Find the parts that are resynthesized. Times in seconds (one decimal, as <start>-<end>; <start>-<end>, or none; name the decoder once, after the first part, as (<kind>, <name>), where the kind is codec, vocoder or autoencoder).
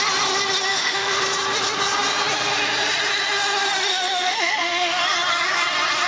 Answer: 0.7-1.2 (autoencoder, DAC-VAE); 3.9-5.0